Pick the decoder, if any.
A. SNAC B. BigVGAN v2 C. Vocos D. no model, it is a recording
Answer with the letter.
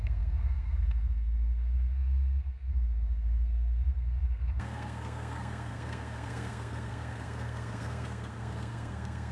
A